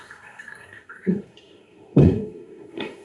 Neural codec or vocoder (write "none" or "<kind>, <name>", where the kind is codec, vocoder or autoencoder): codec, SNAC